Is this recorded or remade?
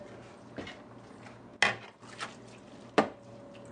recorded